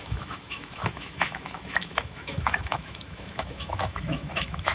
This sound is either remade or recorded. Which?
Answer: remade